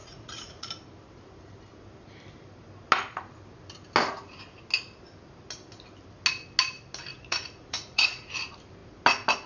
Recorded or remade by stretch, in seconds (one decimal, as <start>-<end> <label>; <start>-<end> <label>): 0.0-0.7 remade; 0.7-7.1 recorded; 7.1-8.3 remade; 8.3-9.5 recorded

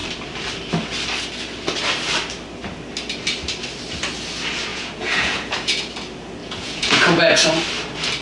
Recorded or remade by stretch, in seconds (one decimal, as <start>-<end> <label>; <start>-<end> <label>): 0.0-4.7 recorded; 4.7-5.8 remade; 5.8-6.4 recorded; 6.4-7.5 remade; 7.5-8.2 recorded

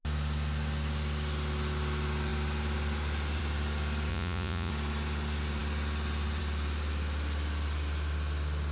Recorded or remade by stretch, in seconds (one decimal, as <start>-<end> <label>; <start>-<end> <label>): 0.0-4.1 recorded; 4.1-4.7 remade; 4.7-8.7 recorded

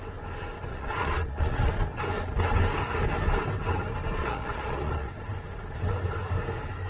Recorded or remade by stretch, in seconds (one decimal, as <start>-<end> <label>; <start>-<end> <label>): 0.0-0.7 recorded; 0.7-1.7 remade; 1.7-4.2 recorded; 4.2-5.1 remade; 5.1-6.9 recorded